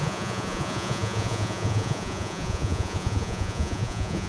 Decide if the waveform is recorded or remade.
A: remade